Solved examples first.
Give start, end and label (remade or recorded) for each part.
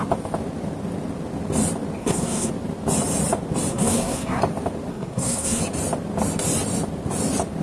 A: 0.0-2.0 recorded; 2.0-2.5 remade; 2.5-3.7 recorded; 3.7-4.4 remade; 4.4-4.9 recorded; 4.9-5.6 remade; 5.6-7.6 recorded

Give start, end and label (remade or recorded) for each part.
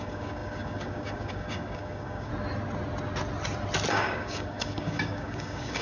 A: 0.0-2.3 remade; 2.3-3.9 recorded; 3.9-5.8 remade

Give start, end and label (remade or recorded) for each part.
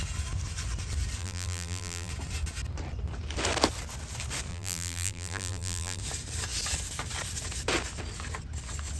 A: 0.0-1.2 recorded; 1.2-2.1 remade; 2.1-4.5 recorded; 4.5-6.0 remade; 6.0-9.0 recorded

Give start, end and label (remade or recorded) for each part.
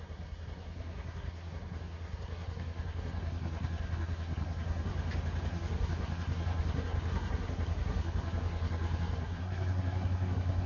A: 0.0-4.9 remade; 4.9-5.5 recorded; 5.5-10.7 remade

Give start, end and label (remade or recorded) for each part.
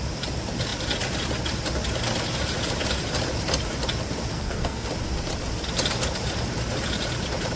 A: 0.0-4.3 recorded; 4.3-4.9 remade; 4.9-7.6 recorded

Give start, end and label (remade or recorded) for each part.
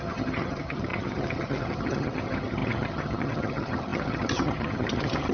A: 0.0-5.3 remade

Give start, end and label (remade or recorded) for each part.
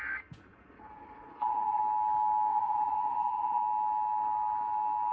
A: 0.0-0.5 recorded; 0.5-1.8 remade; 1.8-2.5 recorded; 2.5-3.6 remade; 3.6-5.1 recorded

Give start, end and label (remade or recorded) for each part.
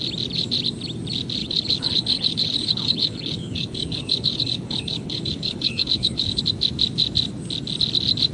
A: 0.0-1.4 recorded; 1.4-6.4 remade; 6.4-8.3 recorded